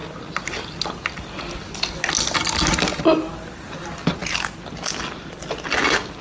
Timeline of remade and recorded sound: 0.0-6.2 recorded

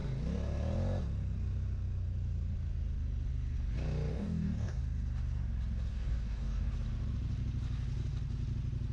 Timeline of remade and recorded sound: 0.0-4.1 recorded; 4.1-4.8 remade; 4.8-5.9 recorded; 5.9-6.7 remade; 6.7-8.9 recorded

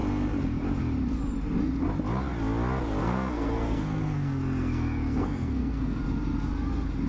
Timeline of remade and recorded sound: 0.0-3.0 recorded; 3.0-6.0 remade; 6.0-7.1 recorded

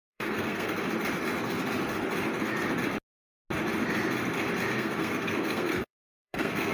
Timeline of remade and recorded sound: 0.0-0.7 remade; 0.7-4.7 recorded; 4.7-6.7 remade

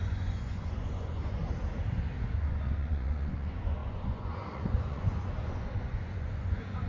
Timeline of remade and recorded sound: 0.0-1.4 remade; 1.4-2.3 recorded; 2.3-6.9 remade

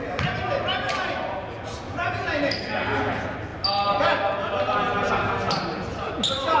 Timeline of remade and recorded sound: 0.0-6.6 recorded